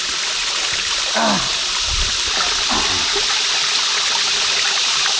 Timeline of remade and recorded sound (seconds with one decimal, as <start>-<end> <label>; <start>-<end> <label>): 0.0-5.2 recorded